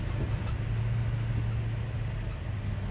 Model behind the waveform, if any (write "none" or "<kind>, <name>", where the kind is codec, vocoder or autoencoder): none